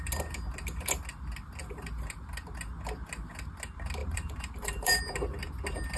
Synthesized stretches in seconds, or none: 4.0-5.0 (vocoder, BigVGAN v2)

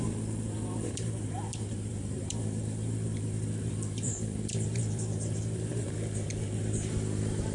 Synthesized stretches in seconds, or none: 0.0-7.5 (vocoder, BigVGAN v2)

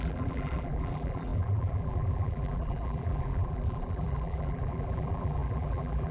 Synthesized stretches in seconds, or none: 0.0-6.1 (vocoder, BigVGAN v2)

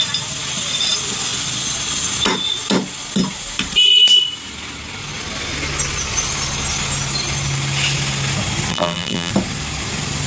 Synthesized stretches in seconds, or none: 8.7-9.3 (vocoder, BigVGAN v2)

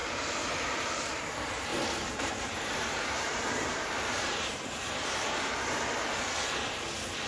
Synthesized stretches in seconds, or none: 0.0-1.2 (vocoder, BigVGAN v2); 1.7-5.8